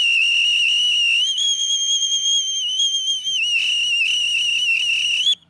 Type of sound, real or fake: fake